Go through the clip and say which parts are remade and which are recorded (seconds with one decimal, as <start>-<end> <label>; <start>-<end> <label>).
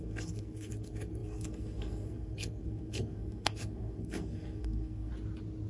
0.0-5.1 remade; 5.1-5.7 recorded